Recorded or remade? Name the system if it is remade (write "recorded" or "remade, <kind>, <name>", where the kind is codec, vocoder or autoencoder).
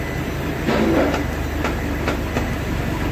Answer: recorded